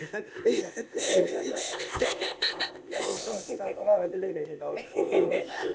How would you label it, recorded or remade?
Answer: remade